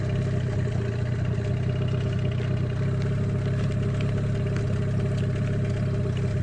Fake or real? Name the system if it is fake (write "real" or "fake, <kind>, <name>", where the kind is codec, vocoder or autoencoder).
real